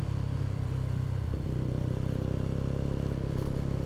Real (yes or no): no